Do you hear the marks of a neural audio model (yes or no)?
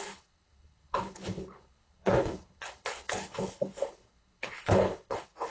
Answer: yes